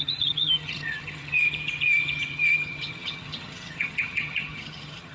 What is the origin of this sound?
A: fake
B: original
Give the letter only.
A